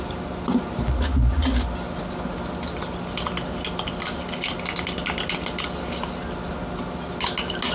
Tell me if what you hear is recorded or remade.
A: recorded